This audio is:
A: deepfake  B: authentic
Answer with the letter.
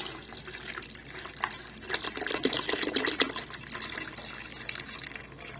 B